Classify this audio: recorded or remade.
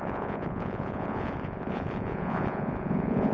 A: remade